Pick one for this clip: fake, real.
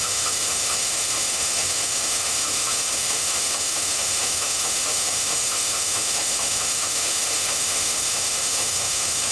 fake